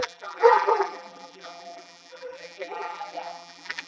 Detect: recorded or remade remade